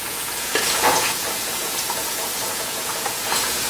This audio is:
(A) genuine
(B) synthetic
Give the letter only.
B